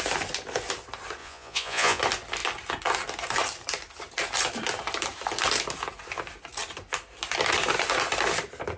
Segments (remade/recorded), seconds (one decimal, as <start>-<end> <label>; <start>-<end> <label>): 0.0-1.2 recorded; 1.2-2.0 remade; 2.0-8.8 recorded